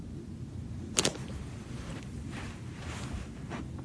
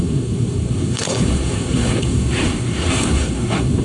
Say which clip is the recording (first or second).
first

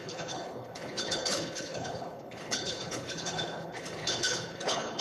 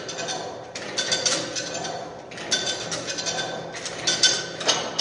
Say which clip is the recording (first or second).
second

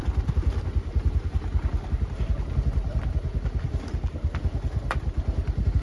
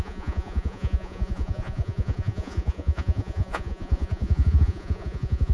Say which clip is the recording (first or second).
first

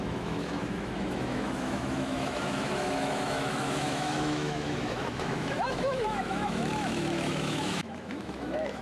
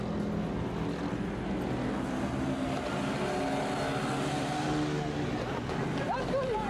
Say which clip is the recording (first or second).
second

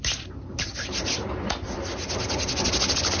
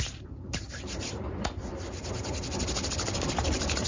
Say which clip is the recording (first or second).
first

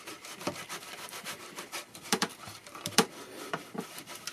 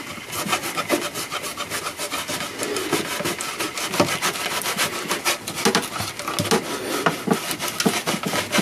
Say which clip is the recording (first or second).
second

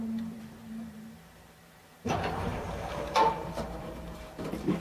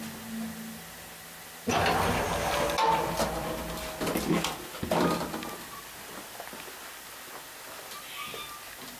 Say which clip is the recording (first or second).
second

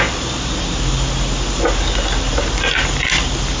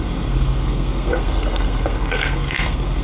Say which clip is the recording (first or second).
first